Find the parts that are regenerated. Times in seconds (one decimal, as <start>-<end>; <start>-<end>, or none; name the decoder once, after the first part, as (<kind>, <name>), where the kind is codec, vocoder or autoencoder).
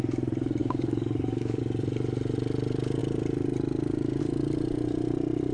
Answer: 0.6-1.6 (codec, DAC)